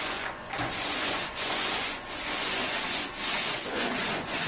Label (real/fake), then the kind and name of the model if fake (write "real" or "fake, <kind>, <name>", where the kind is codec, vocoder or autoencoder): fake, vocoder, Vocos